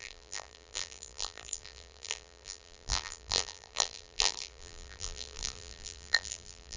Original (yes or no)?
no